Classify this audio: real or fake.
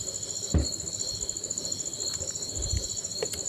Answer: real